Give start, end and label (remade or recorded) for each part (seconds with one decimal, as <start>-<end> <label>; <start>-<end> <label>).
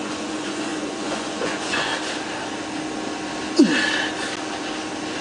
0.0-1.9 remade; 1.9-5.2 recorded